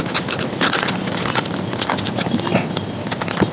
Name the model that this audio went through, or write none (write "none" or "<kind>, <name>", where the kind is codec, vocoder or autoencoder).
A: vocoder, BigVGAN v2